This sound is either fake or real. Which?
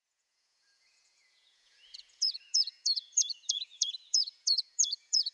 fake